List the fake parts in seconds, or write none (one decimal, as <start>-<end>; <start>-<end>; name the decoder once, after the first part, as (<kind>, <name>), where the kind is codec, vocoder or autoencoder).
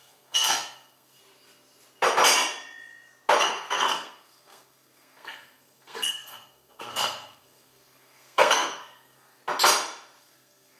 0.0-1.2 (codec, SNAC); 3.4-9.4; 10.2-10.8